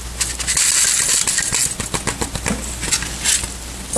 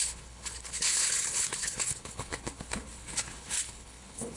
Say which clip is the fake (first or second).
second